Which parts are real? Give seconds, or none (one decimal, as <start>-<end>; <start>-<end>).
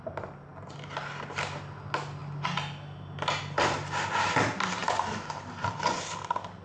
0.0-6.6